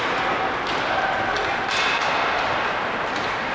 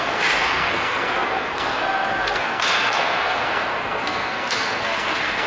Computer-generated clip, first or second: second